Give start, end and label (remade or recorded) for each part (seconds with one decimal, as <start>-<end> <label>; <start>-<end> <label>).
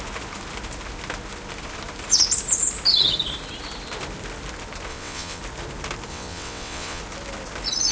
0.0-4.9 recorded; 4.9-5.4 remade; 5.4-6.1 recorded; 6.1-7.0 remade; 7.0-7.9 recorded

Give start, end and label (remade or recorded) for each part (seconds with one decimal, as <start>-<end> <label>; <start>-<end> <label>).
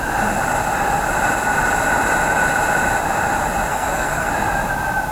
0.0-3.7 recorded; 3.7-4.3 remade; 4.3-5.1 recorded